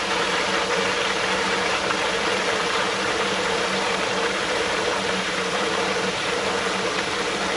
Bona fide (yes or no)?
no